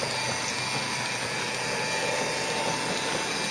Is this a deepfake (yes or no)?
no